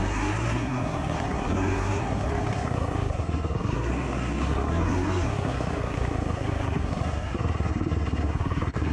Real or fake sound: fake